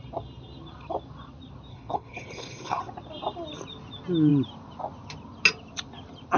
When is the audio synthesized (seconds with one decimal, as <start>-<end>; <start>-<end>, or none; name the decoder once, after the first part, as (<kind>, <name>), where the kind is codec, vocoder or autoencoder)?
1.7-2.8 (codec, HILCodec)